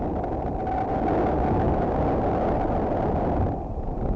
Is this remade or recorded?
recorded